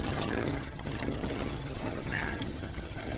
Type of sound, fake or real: fake